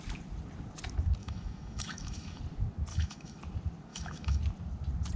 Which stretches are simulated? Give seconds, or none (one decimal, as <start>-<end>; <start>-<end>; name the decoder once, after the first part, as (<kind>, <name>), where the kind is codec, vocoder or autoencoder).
1.2-2.4 (autoencoder, DAC-VAE); 2.9-3.4; 3.9-4.4